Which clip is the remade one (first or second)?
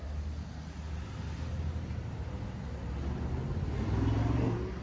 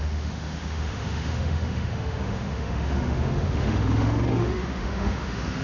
second